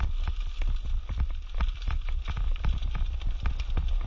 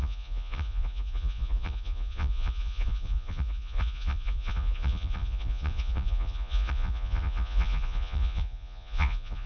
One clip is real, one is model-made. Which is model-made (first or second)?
second